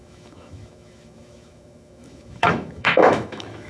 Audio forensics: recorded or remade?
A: remade